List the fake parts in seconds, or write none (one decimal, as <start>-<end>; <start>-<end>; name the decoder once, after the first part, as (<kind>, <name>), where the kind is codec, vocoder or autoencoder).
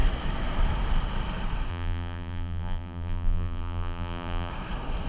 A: 1.7-4.5 (vocoder, BigVGAN v2)